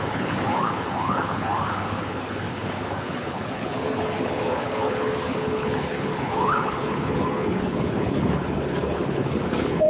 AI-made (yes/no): yes